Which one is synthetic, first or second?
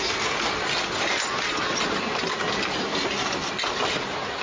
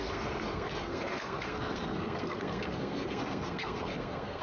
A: second